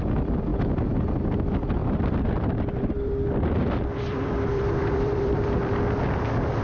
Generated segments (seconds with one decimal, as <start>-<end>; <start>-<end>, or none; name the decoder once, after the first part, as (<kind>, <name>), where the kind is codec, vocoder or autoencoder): 1.8-5.8 (vocoder, BigVGAN v2)